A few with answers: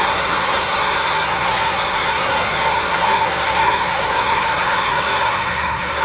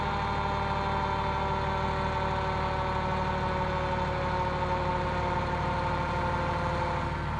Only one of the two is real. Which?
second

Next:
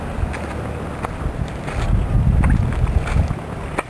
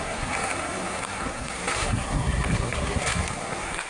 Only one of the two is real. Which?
first